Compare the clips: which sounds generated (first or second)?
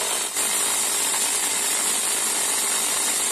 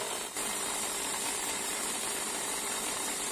second